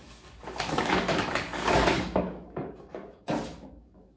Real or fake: fake